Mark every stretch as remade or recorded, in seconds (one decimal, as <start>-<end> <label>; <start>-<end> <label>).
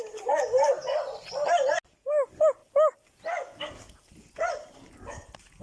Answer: 0.0-5.6 recorded